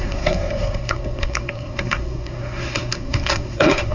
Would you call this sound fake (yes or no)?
yes